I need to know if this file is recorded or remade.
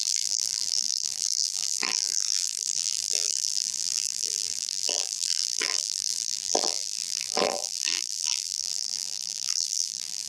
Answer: remade